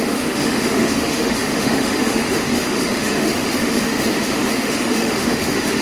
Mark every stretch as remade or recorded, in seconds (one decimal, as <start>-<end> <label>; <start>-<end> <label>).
0.0-5.8 remade